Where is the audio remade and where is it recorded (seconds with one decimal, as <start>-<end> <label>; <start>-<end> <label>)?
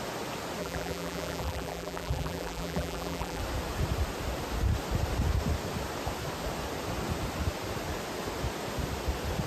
0.0-0.6 recorded; 0.6-3.4 remade; 3.4-9.5 recorded